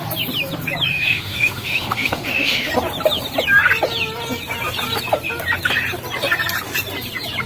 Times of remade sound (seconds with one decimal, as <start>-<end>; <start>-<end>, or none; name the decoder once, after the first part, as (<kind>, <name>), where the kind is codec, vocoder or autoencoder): 0.9-2.7 (autoencoder, DAC-VAE)